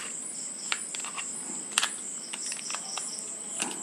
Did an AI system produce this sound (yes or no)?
no